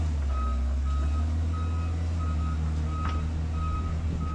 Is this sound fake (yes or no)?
no